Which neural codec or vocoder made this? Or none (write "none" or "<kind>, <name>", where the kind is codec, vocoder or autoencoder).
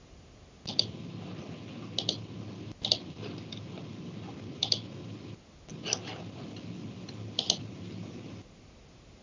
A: none